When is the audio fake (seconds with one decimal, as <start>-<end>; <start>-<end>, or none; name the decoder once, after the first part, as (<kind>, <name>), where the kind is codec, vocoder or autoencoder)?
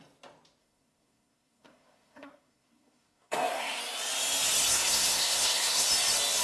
0.6-3.8 (codec, SNAC); 4.7-5.9